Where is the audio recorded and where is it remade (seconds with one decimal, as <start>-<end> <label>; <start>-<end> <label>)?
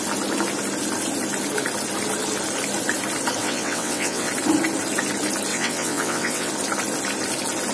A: 0.0-3.4 recorded; 3.4-4.3 remade; 4.3-5.5 recorded; 5.5-6.5 remade; 6.5-7.7 recorded